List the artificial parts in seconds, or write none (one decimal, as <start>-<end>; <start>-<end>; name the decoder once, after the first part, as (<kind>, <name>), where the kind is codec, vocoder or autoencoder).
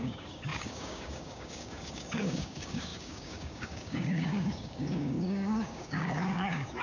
0.0-6.8 (codec, DAC)